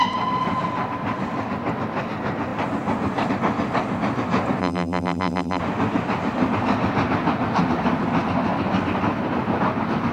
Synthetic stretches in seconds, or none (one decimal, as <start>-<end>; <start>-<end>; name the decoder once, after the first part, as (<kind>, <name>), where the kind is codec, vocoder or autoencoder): 4.6-5.6 (vocoder, BigVGAN v2)